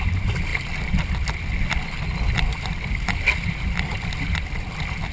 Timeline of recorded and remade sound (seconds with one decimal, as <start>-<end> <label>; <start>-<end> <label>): 0.0-5.1 recorded